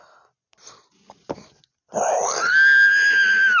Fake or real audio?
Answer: real